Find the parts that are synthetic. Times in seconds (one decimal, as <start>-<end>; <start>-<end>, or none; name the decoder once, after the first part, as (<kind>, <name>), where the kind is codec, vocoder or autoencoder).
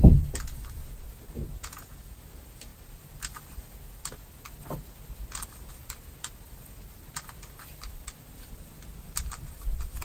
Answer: 1.4-2.2 (vocoder, Vocos)